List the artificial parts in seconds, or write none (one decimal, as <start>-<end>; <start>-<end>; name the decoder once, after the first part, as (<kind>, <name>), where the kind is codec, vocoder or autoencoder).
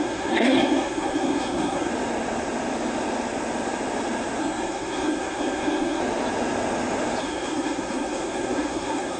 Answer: 0.0-1.9 (codec, SNAC); 4.4-6.0; 7.2-9.2